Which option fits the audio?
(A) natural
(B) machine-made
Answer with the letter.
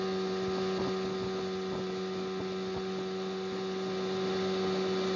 A